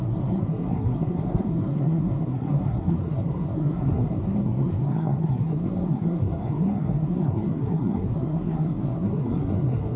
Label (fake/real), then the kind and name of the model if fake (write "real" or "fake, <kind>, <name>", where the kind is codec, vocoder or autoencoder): fake, codec, SNAC